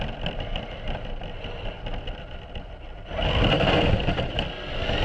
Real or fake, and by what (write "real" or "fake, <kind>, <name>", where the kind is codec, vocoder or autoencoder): real